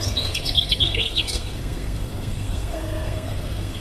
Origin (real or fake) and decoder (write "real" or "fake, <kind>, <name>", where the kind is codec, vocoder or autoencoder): fake, codec, SNAC